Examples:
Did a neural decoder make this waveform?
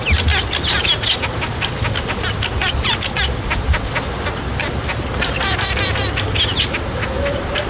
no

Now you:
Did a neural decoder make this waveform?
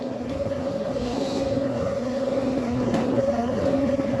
yes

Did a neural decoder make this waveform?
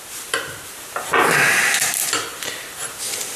no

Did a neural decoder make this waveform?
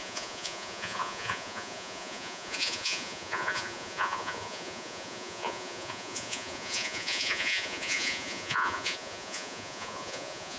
yes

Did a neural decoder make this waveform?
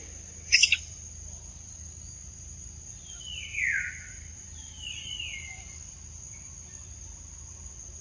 no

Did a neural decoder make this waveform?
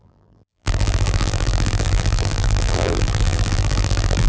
yes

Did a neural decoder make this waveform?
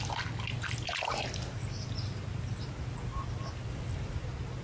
no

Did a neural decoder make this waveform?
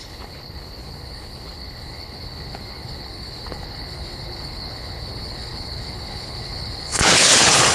yes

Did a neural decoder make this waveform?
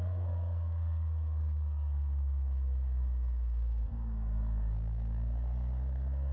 yes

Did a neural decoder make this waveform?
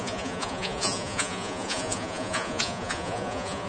yes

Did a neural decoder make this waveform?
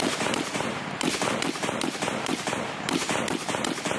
yes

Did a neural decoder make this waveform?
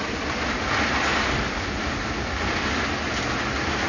no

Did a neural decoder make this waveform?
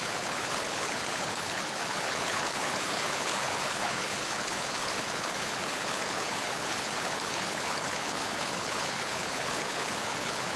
yes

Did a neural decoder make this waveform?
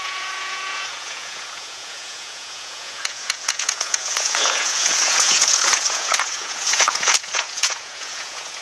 yes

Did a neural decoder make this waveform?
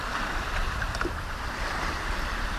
yes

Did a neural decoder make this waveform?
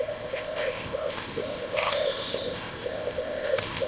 yes